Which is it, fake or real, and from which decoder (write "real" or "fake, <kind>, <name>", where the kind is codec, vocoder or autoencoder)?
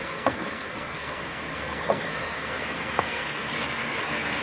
fake, codec, SNAC